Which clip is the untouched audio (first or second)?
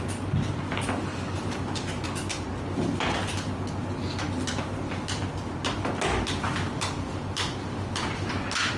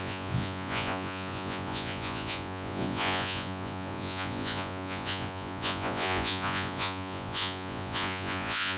first